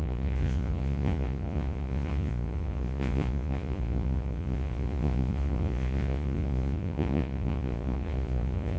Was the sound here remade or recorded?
remade